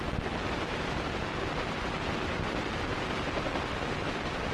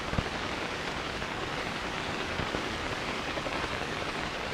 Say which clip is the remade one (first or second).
second